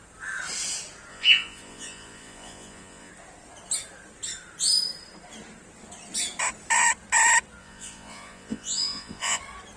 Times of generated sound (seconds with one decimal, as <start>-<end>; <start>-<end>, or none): 1.1-3.1; 7.6-9.4